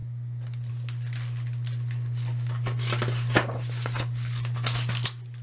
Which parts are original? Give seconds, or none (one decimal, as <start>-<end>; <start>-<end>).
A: 0.0-5.4